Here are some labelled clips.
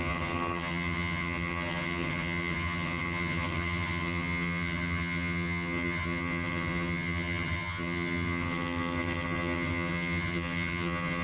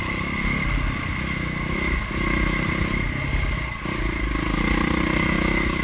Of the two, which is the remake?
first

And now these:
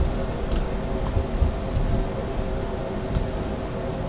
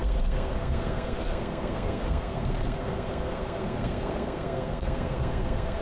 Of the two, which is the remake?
second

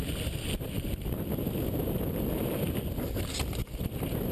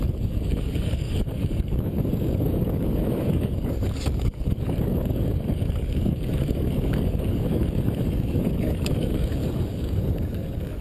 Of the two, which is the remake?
second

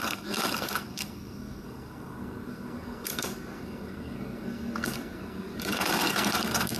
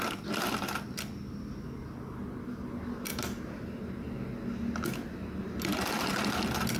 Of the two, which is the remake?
first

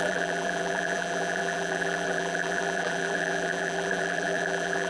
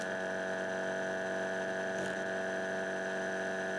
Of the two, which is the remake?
first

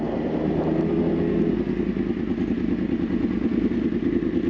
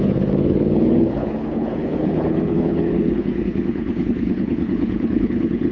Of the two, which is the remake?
second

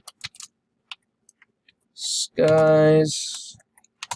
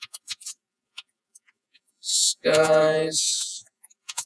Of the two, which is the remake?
second